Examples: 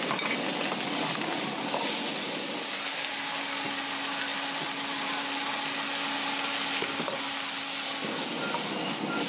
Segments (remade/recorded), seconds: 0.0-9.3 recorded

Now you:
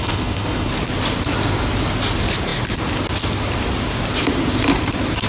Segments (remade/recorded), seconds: 0.0-0.7 remade; 0.7-5.3 recorded